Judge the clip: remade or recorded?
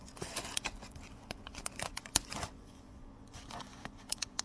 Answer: remade